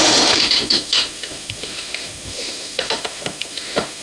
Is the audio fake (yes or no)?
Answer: yes